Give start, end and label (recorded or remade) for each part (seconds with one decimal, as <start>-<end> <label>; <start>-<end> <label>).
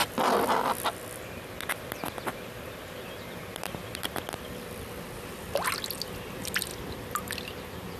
0.0-8.0 recorded